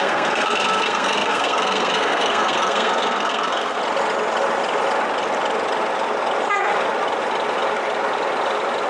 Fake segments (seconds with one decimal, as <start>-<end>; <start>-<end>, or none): 0.0-3.8